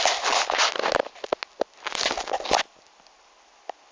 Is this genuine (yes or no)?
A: yes